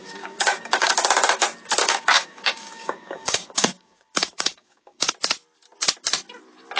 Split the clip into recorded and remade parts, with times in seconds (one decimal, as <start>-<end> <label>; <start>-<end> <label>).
0.0-0.9 remade; 0.9-1.8 recorded; 1.8-5.1 remade; 5.1-6.8 recorded